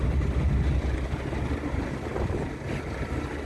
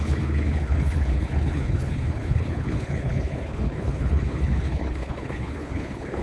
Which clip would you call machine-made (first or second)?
second